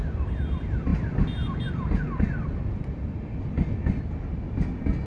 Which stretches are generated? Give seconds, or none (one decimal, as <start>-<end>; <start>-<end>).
none

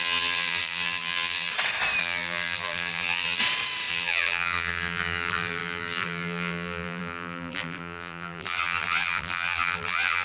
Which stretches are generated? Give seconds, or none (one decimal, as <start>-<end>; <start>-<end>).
0.0-1.5; 2.0-3.4; 3.9-10.2